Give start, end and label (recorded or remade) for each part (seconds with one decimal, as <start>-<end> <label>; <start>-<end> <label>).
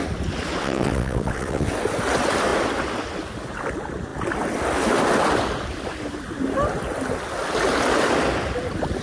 0.0-0.6 recorded; 0.6-1.7 remade; 1.7-9.0 recorded